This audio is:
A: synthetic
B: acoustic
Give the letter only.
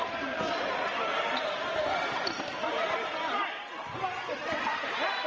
B